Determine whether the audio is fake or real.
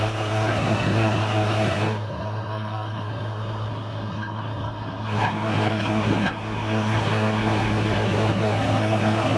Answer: fake